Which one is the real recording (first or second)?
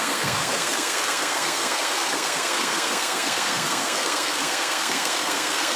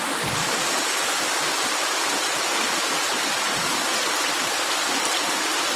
second